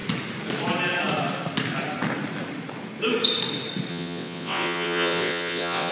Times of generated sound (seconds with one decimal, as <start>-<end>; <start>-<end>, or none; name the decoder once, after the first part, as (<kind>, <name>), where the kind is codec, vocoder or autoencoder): 3.9-5.9 (vocoder, WaveNeXt)